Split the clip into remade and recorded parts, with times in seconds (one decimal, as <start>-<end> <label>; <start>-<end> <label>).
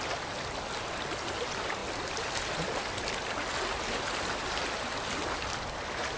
0.0-6.2 recorded